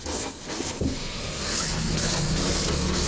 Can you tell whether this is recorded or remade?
remade